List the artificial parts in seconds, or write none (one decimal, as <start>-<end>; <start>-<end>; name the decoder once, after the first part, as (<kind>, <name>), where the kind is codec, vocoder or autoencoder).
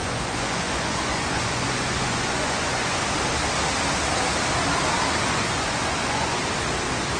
0.0-3.0 (vocoder, Vocos); 5.2-6.4